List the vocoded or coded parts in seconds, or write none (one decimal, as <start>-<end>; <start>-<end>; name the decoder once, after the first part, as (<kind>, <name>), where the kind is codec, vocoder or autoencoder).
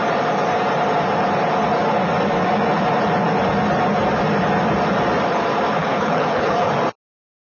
5.8-6.7 (codec, HILCodec)